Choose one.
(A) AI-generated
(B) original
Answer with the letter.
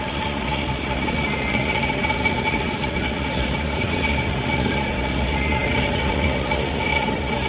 A